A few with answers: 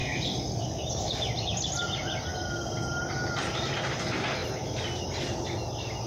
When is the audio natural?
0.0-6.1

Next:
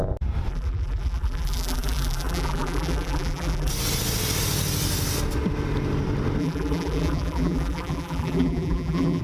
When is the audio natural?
0.0-0.5; 3.7-6.4